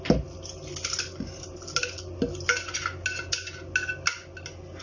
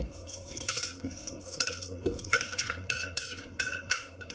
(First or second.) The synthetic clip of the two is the second